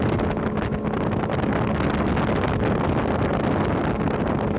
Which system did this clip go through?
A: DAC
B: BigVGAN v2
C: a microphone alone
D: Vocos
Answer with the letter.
C